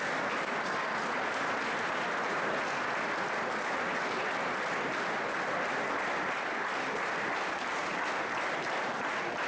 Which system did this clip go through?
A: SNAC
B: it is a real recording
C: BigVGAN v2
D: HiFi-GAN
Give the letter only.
B